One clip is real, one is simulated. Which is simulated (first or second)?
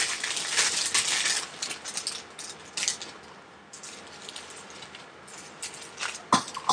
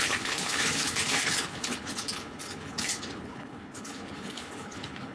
second